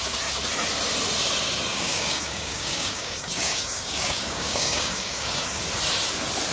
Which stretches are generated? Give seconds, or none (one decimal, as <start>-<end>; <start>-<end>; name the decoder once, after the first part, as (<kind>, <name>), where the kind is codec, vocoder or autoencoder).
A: 1.7-5.6 (codec, DAC)

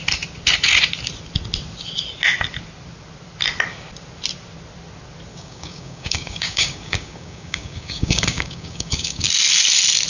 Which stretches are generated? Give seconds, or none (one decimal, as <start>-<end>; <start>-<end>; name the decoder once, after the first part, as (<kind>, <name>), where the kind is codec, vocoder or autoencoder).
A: 5.3-9.3 (codec, DAC)

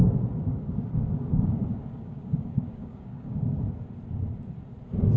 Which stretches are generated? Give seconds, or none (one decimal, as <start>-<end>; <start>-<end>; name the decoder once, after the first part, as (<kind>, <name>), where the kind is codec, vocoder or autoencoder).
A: 0.5-3.6 (codec, DAC)

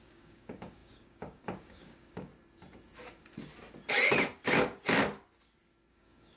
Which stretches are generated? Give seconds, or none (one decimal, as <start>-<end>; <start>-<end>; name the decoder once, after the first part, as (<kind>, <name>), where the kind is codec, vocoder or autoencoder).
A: 0.0-2.3 (codec, DAC); 5.9-6.4